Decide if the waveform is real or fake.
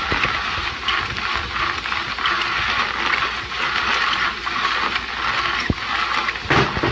real